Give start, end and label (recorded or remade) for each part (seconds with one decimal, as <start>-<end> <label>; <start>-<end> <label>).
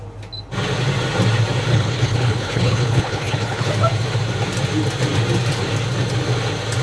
0.0-1.7 recorded; 1.7-3.7 remade; 3.7-6.8 recorded